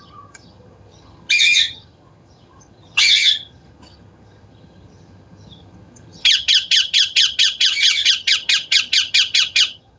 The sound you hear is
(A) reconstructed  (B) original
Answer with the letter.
A